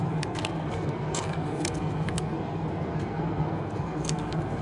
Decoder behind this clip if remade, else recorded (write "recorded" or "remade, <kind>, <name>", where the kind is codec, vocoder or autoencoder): remade, codec, SNAC